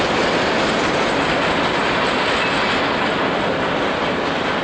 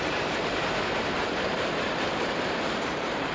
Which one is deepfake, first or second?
second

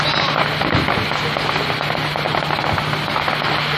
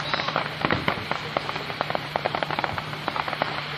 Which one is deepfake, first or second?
second